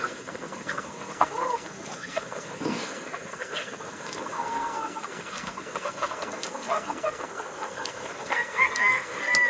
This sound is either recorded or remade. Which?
remade